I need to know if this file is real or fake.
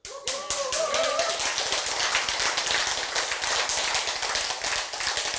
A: real